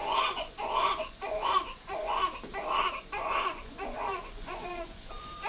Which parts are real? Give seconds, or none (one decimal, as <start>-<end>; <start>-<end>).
2.2-2.9